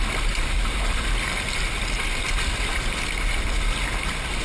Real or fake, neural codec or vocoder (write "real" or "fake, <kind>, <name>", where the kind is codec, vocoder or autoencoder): real